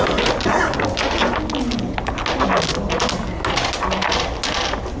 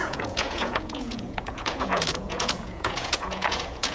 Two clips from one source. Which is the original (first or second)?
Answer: first